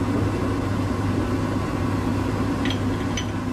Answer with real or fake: real